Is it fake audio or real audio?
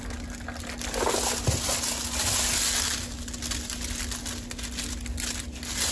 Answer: real